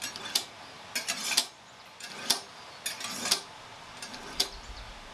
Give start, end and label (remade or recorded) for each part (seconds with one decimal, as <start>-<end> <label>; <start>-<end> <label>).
0.0-1.4 recorded; 1.4-2.1 remade; 2.1-5.1 recorded